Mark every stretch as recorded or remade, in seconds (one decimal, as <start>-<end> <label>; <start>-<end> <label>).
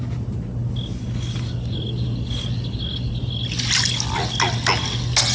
0.0-5.3 recorded